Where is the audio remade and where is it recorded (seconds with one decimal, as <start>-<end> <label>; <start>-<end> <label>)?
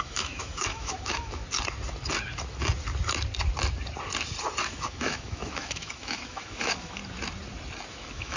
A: 0.0-1.4 remade; 1.4-4.6 recorded; 4.6-7.0 remade; 7.0-7.9 recorded; 7.9-8.4 remade